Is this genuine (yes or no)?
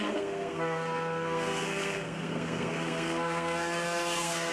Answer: no